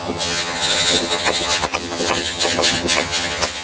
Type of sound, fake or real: fake